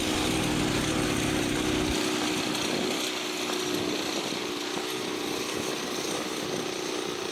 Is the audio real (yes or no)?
yes